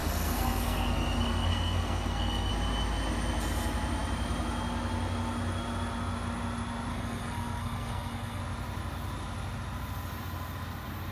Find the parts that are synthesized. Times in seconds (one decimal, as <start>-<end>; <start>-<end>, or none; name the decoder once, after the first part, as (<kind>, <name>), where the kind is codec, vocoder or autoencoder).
0.0-2.5 (codec, SNAC); 6.9-8.4